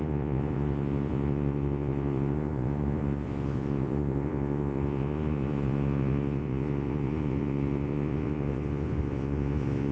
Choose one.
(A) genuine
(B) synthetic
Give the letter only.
B